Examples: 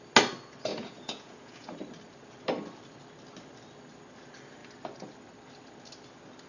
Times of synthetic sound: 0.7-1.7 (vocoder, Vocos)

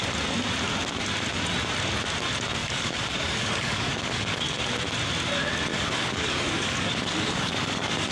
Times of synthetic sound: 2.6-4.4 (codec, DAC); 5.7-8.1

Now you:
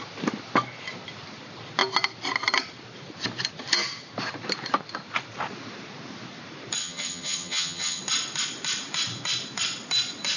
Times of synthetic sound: 6.8-8.0 (vocoder, HiFi-GAN)

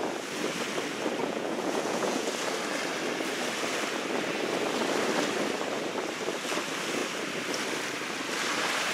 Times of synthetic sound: 1.2-2.3 (vocoder, Vocos)

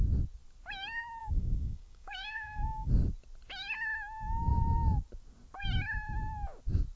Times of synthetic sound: 1.2-2.9 (codec, DAC)